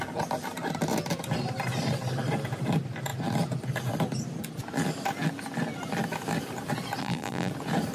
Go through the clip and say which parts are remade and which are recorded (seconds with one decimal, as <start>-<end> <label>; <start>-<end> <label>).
0.0-7.0 recorded; 7.0-7.5 remade; 7.5-7.9 recorded